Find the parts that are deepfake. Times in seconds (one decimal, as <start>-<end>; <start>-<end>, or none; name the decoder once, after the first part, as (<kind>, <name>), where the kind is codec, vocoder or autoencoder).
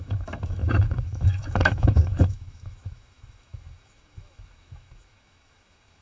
0.0-6.0 (autoencoder, DAC-VAE)